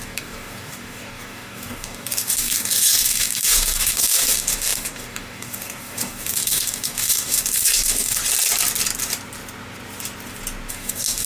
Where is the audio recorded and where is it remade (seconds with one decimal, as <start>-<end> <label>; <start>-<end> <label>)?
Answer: 0.0-8.2 remade; 8.2-10.7 recorded; 10.7-11.3 remade